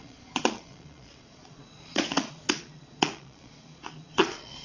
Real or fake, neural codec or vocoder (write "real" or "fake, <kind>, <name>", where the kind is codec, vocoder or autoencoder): fake, vocoder, Vocos